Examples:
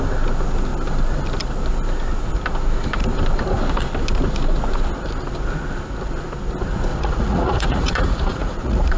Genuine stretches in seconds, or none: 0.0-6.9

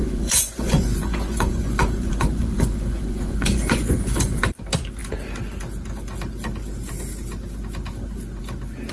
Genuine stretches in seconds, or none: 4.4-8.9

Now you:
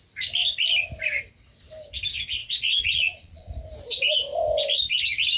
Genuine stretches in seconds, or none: 0.0-2.4; 3.5-5.4